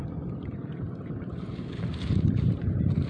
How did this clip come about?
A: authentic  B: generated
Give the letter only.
A